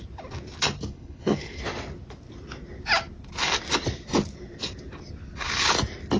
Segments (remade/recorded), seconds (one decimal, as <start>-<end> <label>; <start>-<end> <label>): 0.0-0.9 recorded; 0.9-1.6 remade; 1.6-6.2 recorded